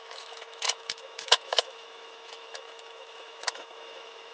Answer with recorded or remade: remade